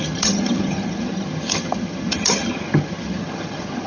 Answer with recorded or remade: remade